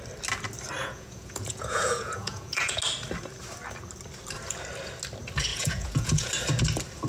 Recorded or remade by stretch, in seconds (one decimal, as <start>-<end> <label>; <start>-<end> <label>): 0.0-0.8 recorded; 0.8-2.8 remade; 2.8-5.5 recorded; 5.5-6.3 remade; 6.3-7.1 recorded